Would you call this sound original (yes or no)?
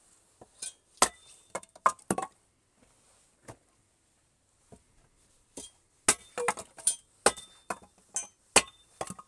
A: yes